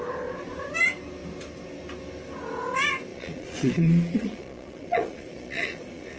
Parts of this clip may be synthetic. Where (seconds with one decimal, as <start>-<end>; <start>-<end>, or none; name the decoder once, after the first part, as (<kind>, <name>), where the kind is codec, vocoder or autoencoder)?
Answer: 3.1-6.2 (vocoder, Vocos)